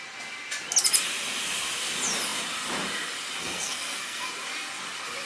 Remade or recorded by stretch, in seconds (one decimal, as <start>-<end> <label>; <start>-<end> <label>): 0.0-3.4 recorded; 3.4-4.3 remade; 4.3-5.3 recorded